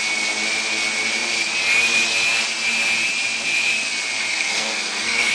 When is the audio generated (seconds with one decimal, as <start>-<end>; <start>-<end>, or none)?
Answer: 4.3-5.3